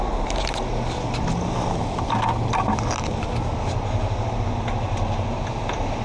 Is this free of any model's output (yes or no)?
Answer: yes